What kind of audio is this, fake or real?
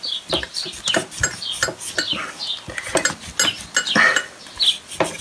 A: real